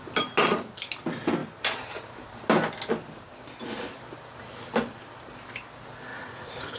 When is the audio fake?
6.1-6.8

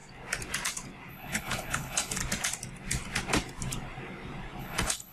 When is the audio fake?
1.1-2.2; 4.6-5.1